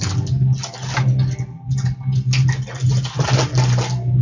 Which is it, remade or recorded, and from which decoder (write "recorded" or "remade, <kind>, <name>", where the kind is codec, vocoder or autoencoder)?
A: recorded